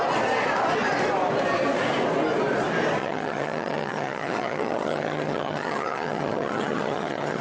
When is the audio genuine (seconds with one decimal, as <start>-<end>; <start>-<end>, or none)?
0.0-3.0